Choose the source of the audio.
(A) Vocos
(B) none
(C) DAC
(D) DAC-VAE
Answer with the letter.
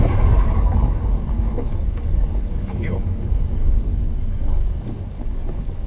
C